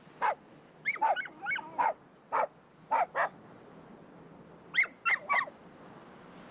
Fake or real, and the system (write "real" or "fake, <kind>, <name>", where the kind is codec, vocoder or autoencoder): real